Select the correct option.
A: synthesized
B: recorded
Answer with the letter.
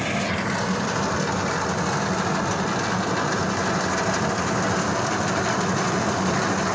B